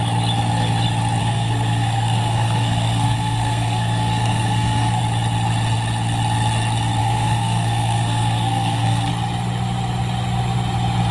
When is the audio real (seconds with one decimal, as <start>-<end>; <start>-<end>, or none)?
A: 0.0-1.2; 5.0-7.0; 9.1-11.1